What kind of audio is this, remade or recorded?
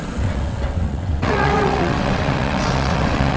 remade